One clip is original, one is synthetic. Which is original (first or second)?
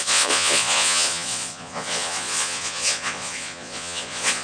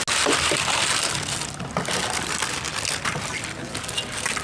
second